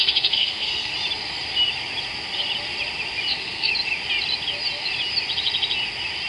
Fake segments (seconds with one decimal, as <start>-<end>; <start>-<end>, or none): 0.0-0.9; 3.3-3.7